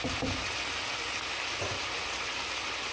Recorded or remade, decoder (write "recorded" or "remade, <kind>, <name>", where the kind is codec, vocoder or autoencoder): recorded